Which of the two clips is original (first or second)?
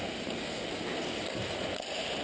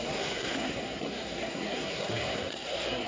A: first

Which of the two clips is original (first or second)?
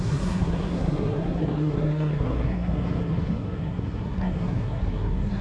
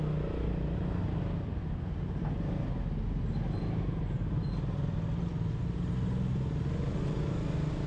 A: second